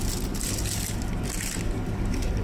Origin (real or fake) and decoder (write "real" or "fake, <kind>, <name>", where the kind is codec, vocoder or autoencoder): real